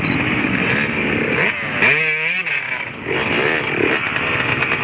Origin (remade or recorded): recorded